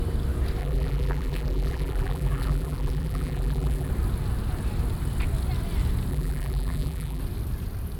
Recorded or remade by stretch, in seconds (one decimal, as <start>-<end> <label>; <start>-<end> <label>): 0.0-0.6 recorded; 0.6-3.9 remade; 3.9-6.1 recorded; 6.1-7.2 remade; 7.2-8.0 recorded